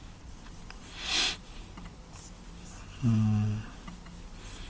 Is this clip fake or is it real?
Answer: real